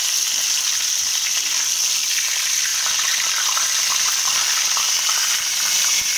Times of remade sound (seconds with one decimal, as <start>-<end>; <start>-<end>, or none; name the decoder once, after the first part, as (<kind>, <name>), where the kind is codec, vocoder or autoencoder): none